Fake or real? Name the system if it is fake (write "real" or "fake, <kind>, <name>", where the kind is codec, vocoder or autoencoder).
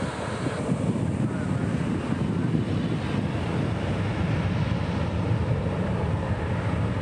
real